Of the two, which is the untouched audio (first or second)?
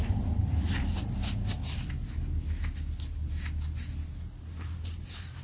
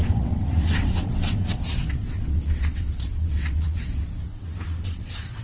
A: first